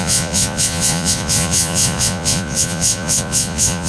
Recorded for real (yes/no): no